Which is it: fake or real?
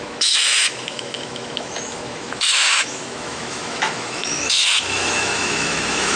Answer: fake